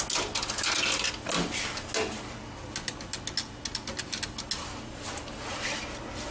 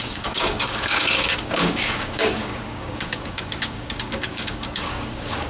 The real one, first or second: first